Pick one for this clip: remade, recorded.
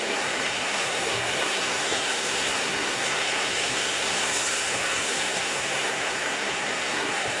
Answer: remade